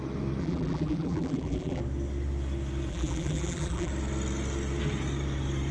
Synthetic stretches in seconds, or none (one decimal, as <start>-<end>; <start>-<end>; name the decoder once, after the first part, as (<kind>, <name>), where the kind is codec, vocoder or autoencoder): 0.4-1.8 (vocoder, BigVGAN v2); 2.9-3.9